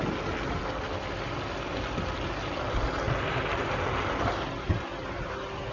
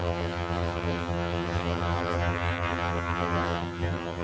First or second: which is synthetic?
second